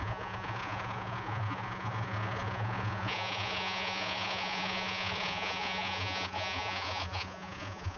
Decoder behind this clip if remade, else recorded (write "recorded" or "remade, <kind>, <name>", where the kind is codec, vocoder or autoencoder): remade, vocoder, Vocos